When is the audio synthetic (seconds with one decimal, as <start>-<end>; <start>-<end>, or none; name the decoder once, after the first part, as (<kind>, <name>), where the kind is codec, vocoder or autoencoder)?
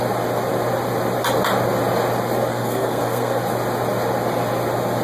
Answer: 2.5-3.4 (codec, SNAC)